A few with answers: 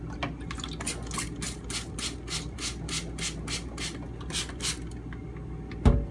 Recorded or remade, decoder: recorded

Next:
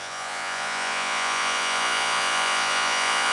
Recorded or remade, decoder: remade, vocoder, Vocos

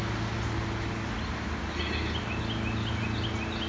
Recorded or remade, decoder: recorded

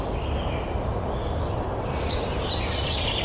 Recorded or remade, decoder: recorded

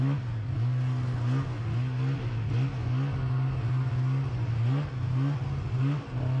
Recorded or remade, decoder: recorded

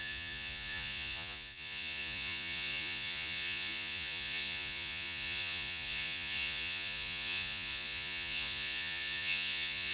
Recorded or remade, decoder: remade, vocoder, Vocos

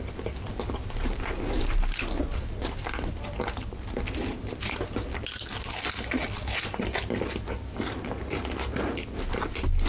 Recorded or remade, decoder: recorded